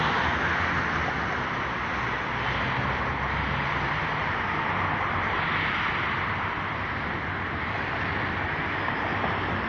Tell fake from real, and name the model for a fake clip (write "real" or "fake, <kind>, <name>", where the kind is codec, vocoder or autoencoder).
real